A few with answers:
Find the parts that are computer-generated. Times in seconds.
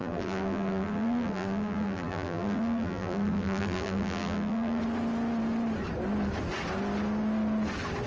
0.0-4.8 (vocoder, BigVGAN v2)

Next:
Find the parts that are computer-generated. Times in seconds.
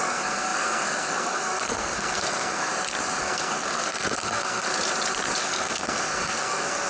0.0-2.7 (codec, SNAC); 3.2-4.7; 5.4-6.9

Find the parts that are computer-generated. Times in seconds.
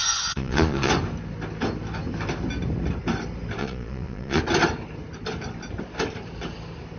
0.0-0.9 (vocoder, Vocos); 3.6-4.4